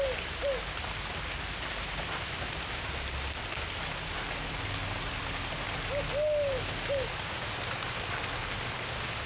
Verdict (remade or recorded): recorded